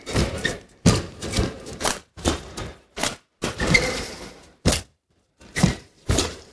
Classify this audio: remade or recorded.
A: remade